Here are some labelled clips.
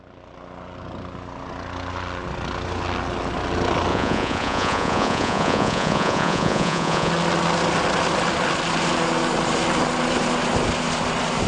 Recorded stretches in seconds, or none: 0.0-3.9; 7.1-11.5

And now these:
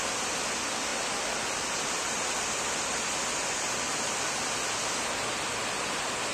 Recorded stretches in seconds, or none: 0.0-6.3